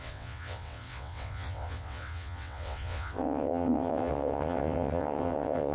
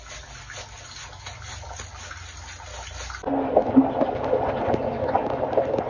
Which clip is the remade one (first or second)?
first